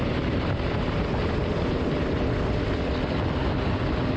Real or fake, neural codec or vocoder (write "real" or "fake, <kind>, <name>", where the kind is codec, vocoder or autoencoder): real